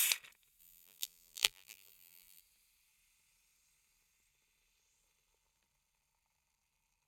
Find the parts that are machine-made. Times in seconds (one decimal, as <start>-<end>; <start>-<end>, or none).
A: 0.6-2.4